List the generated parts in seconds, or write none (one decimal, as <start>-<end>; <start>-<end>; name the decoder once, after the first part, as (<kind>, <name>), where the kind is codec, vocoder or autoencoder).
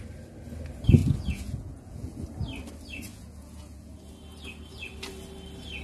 1.0-2.2 (vocoder, Vocos); 3.1-3.9